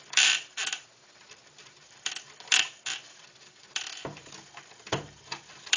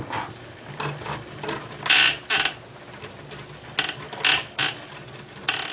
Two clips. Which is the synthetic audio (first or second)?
first